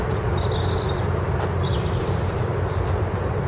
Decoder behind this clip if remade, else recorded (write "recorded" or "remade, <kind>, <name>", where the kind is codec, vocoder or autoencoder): recorded